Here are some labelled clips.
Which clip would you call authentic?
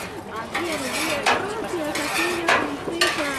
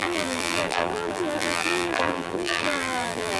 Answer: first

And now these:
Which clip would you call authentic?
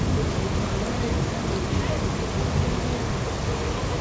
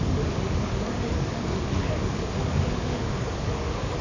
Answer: first